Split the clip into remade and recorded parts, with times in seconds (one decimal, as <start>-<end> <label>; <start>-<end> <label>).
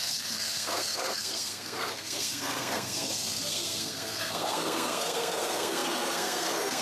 0.0-6.8 remade